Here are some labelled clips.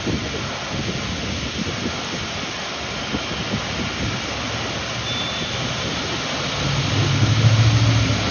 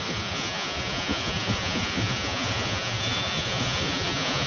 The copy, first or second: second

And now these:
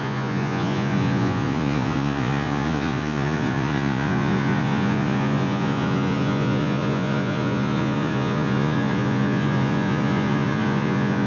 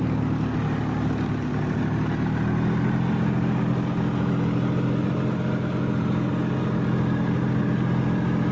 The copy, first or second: first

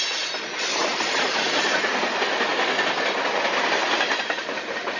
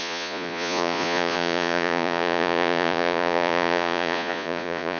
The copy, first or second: second